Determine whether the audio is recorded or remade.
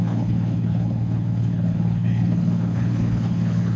remade